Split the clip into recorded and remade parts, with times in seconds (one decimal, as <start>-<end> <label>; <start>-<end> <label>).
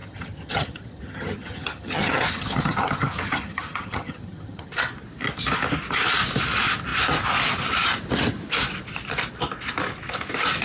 0.0-4.7 remade; 4.7-10.6 recorded